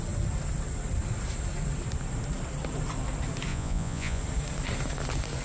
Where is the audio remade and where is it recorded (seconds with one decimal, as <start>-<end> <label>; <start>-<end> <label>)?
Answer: 0.0-3.5 recorded; 3.5-4.2 remade; 4.2-5.4 recorded